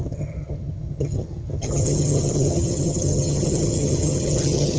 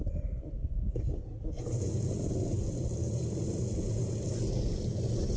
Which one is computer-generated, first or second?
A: first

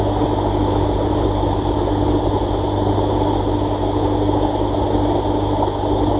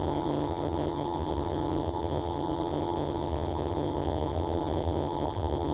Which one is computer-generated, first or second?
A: second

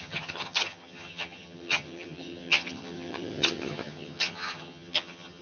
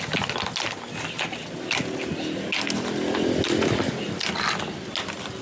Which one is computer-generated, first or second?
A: first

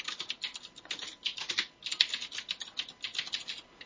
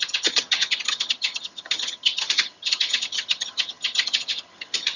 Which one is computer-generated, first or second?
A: second